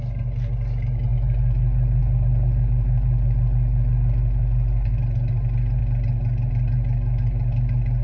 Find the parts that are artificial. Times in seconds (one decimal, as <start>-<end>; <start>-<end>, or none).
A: none

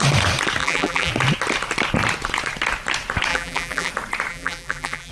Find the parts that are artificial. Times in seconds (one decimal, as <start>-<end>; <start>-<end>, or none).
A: 0.6-1.1; 3.3-3.9; 4.3-5.1

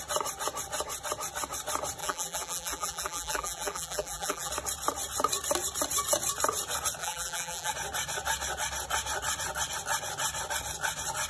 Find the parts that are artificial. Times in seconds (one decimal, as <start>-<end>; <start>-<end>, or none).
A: 2.0-4.5; 7.0-7.7

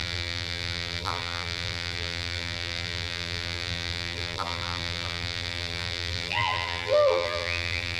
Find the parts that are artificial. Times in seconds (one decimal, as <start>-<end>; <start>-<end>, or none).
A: 0.0-8.0

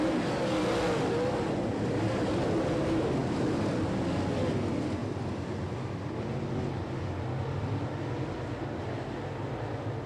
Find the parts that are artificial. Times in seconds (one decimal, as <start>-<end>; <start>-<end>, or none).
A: none

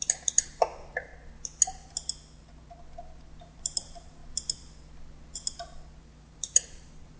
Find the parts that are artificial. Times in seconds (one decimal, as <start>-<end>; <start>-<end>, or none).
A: 0.0-1.1; 3.4-4.2; 6.0-7.2

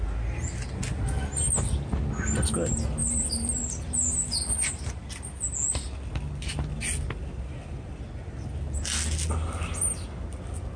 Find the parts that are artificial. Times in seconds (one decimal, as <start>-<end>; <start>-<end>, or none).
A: 3.0-5.0